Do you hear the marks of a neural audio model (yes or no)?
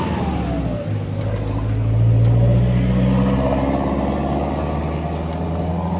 no